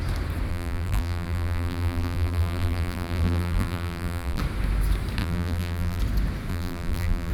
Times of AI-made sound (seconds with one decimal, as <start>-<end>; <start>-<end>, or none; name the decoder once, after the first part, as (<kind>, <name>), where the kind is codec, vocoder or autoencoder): 0.5-4.4 (vocoder, BigVGAN v2); 5.2-6.0; 6.5-7.3